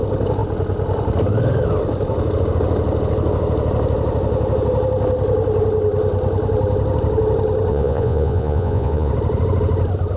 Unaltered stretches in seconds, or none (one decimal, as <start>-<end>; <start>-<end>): 0.0-7.7; 9.1-10.2